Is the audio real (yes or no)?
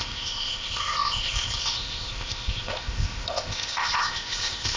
no